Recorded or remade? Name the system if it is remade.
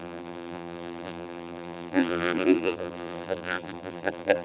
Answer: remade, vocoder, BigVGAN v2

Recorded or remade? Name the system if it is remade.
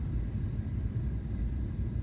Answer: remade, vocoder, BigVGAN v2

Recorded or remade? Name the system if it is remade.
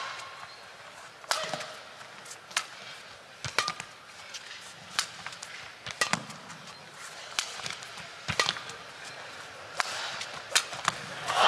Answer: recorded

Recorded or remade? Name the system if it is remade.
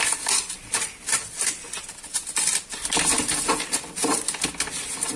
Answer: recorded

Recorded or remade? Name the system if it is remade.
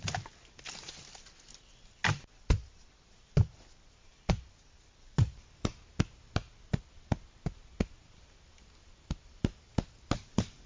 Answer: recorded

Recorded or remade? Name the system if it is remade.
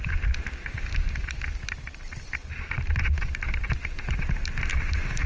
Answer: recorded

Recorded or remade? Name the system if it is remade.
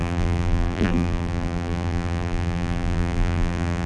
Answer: remade, vocoder, BigVGAN v2